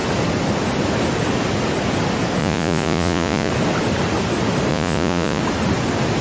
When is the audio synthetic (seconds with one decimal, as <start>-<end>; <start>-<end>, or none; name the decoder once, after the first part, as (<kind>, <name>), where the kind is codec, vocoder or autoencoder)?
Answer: 2.4-3.5 (vocoder, Vocos); 4.7-5.4